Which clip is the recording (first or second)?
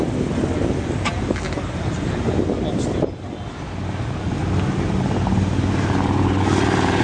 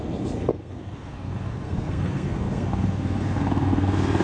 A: first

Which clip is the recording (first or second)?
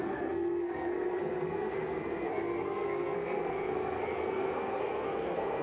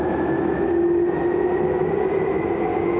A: second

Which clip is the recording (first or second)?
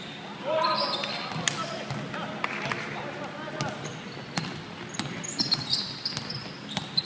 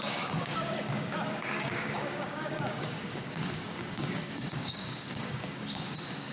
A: first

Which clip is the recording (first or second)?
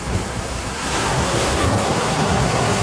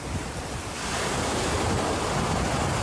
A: second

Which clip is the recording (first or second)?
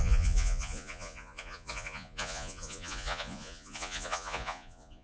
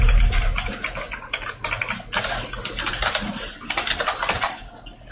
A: second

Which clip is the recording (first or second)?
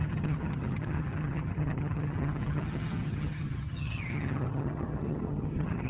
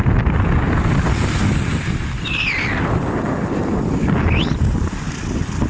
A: second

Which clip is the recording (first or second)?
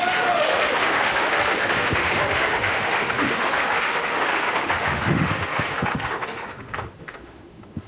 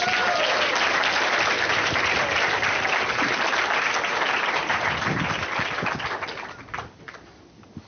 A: second